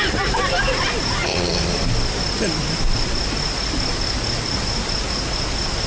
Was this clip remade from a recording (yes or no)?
no